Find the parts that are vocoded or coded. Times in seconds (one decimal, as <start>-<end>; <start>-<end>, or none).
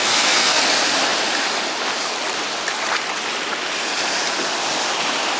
0.0-0.6